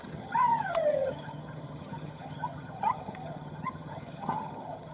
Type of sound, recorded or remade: remade